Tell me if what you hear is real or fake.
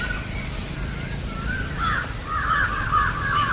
real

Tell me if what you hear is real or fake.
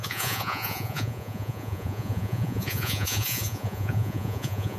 fake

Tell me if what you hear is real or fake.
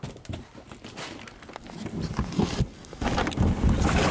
real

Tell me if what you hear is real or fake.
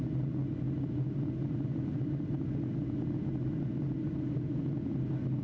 real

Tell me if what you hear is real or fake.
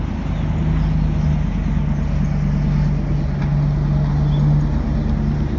real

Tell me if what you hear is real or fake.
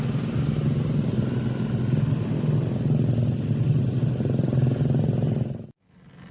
real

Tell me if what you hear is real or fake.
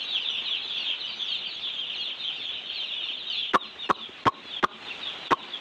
real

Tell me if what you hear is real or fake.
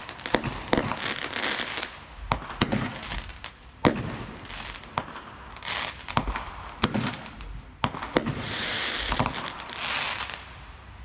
real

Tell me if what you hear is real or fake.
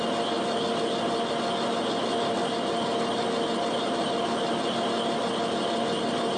real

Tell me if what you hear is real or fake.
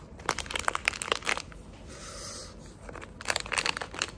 real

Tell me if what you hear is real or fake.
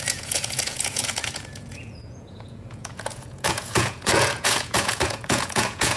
fake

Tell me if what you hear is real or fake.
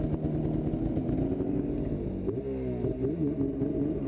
real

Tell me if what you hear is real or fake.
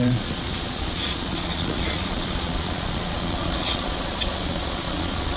fake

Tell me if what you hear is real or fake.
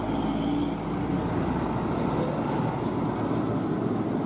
real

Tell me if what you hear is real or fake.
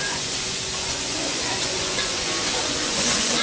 fake